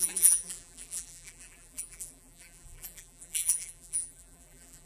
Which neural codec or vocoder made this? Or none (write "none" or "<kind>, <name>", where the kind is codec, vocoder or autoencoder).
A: vocoder, BigVGAN v2